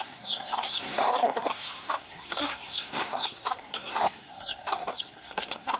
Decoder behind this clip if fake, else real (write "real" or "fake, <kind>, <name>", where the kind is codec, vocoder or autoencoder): fake, codec, SNAC